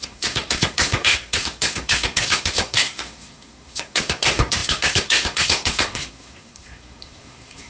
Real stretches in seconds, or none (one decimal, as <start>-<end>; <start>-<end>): none